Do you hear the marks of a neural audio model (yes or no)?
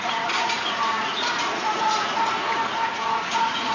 yes